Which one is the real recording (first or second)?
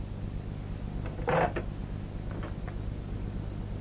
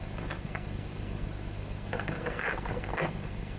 first